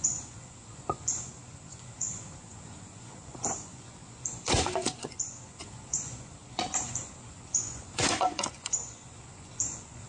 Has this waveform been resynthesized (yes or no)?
yes